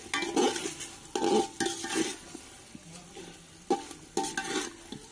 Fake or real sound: real